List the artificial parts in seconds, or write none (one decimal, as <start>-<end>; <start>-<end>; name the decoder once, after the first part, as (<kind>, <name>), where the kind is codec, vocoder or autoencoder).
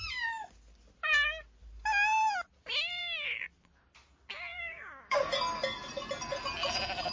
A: 4.5-5.3 (codec, DAC)